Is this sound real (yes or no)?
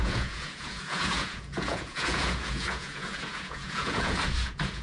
no